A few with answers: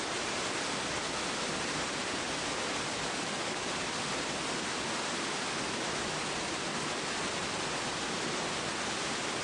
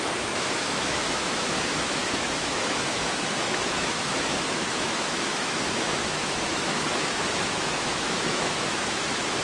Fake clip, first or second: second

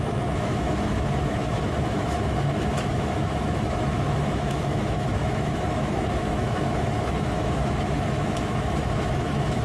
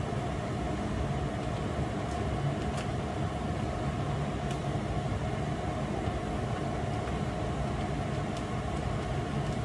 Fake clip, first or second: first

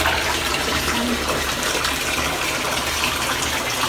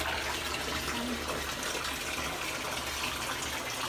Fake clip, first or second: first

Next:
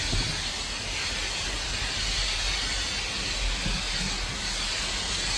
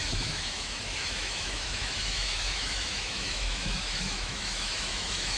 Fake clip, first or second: second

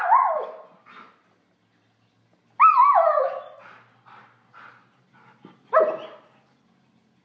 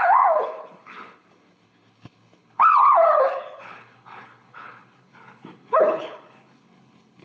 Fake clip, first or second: second